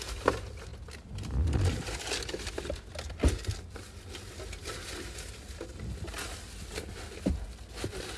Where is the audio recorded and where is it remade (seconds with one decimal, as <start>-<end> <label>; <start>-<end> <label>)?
0.0-8.2 recorded